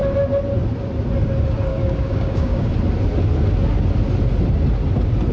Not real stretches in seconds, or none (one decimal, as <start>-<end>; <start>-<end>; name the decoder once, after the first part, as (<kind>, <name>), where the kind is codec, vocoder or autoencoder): 1.7-2.7 (codec, DAC)